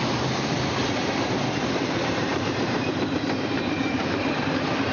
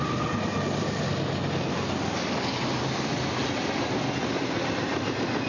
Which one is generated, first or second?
first